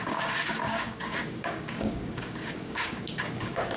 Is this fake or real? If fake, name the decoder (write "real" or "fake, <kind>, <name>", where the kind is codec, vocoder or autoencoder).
fake, codec, DAC